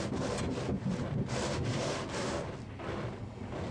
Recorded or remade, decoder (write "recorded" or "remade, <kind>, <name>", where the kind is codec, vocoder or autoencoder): recorded